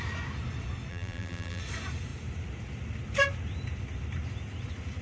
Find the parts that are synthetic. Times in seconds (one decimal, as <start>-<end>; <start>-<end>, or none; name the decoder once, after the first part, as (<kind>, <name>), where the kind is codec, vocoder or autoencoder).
0.9-1.6 (vocoder, BigVGAN v2)